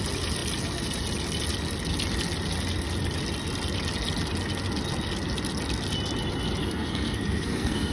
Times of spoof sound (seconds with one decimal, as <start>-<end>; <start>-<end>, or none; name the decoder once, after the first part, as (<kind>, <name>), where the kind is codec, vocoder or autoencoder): 6.6-7.9 (codec, SNAC)

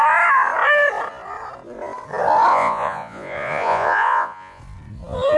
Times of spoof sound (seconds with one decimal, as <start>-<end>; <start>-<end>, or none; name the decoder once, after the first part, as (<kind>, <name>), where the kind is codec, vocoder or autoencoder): 2.5-4.6 (vocoder, Vocos)

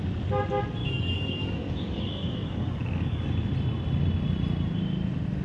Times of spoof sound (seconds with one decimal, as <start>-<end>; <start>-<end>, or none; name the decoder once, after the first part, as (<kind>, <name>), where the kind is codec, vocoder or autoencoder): 0.8-3.2 (codec, DAC)

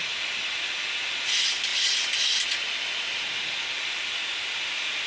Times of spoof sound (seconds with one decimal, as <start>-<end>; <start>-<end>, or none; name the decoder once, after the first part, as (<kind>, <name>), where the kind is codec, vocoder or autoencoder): none